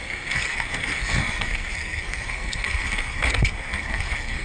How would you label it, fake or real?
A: fake